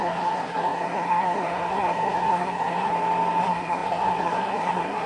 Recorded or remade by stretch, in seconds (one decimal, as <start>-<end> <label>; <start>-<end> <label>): 0.0-2.9 remade; 2.9-3.4 recorded; 3.4-5.1 remade